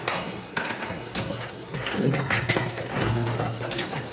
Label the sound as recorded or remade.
remade